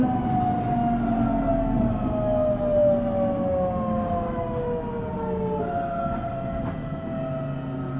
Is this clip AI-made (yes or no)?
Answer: no